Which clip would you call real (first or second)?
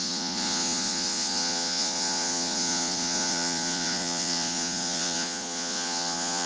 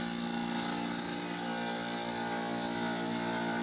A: second